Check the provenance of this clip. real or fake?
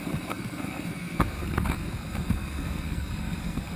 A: fake